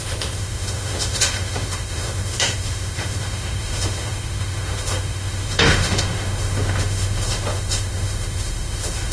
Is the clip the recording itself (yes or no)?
no